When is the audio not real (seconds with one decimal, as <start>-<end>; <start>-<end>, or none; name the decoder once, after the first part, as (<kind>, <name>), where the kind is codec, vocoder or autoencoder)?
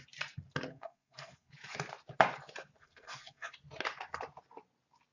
0.7-1.5 (codec, SNAC); 2.8-3.5